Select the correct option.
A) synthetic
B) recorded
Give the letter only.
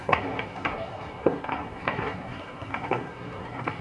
A